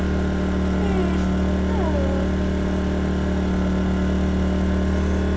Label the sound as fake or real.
real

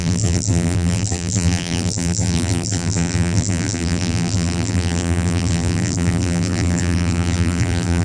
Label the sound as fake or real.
fake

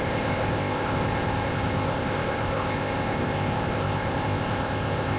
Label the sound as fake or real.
fake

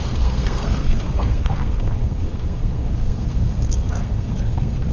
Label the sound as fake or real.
fake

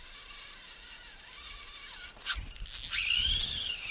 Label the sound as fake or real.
real